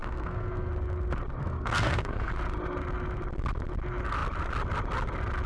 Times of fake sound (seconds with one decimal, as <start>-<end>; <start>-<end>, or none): 0.0-0.7; 1.4-2.3